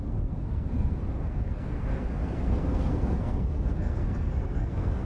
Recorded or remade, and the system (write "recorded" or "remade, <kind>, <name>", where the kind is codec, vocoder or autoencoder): remade, codec, SNAC